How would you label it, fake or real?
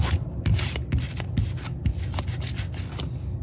real